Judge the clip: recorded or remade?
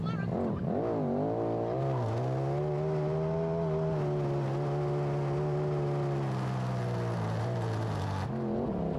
recorded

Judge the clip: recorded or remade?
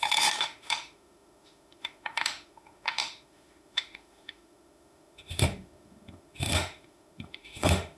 remade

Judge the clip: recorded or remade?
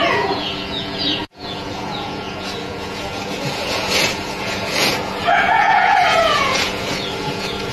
remade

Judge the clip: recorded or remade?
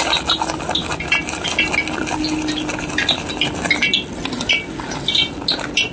recorded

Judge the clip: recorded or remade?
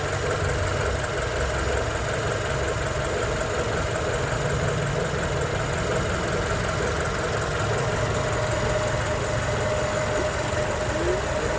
recorded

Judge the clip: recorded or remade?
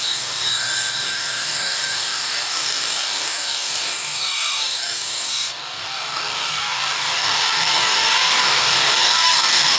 remade